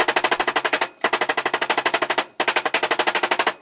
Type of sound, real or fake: real